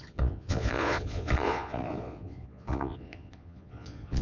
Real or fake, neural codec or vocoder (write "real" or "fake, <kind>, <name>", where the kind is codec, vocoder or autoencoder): fake, vocoder, Vocos